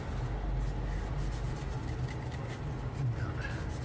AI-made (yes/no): no